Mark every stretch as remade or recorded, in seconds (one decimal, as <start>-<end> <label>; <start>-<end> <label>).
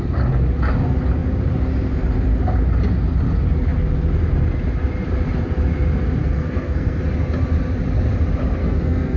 0.0-6.2 recorded; 6.2-7.0 remade; 7.0-8.6 recorded; 8.6-9.2 remade